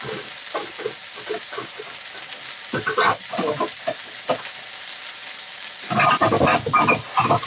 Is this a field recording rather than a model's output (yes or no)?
yes